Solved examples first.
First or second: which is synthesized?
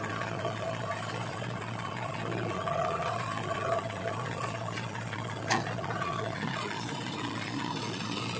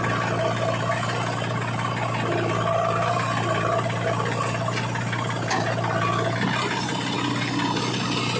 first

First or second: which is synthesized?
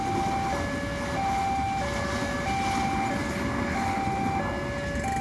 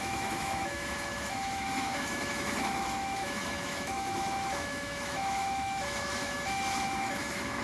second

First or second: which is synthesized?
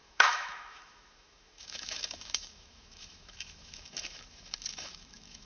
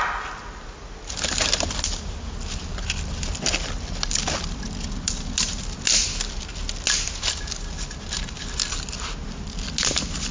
first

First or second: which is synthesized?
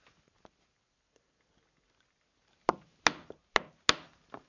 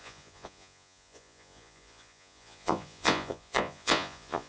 second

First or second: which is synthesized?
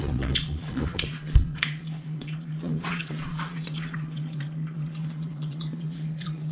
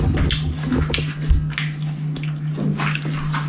first